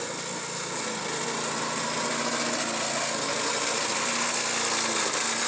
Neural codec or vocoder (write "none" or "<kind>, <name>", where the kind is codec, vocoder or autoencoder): none